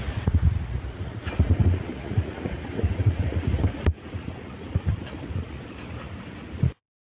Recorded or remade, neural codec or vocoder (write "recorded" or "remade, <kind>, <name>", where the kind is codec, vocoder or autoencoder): remade, vocoder, Vocos